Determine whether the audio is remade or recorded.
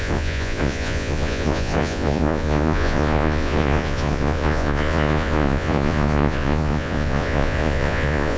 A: remade